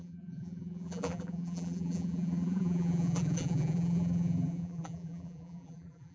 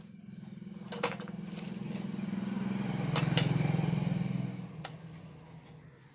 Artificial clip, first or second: first